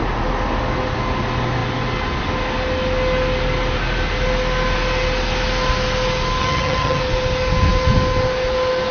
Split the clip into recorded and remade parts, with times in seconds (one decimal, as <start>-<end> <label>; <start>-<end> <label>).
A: 0.0-6.4 recorded; 6.4-7.0 remade; 7.0-8.9 recorded